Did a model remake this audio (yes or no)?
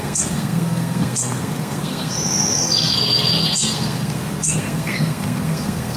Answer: yes